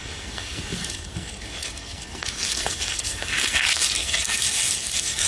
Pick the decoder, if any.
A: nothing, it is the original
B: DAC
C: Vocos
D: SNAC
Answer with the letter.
D